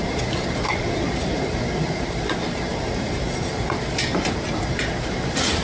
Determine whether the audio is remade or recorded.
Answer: remade